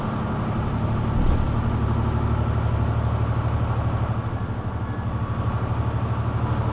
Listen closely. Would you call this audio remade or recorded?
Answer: recorded